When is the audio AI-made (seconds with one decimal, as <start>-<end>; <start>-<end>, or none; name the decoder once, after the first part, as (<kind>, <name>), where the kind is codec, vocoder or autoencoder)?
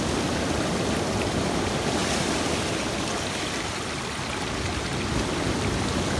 none